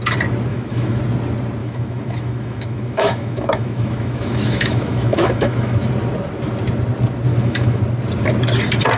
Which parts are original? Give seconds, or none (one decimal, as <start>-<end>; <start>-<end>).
0.0-0.5; 1.0-1.6; 5.9-7.3; 7.8-9.0